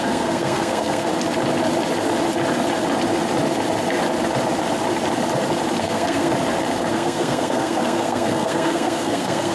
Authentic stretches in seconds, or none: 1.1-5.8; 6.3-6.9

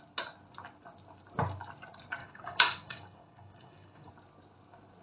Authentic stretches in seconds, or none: 0.0-2.2; 4.1-5.0

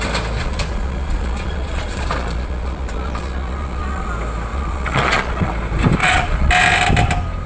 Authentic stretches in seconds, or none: 0.0-0.4; 4.1-4.5; 5.5-6.0; 6.5-7.5